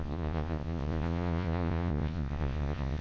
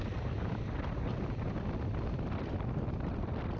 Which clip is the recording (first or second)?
second